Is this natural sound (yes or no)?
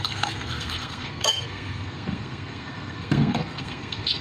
no